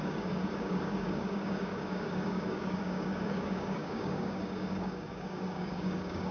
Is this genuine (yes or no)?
no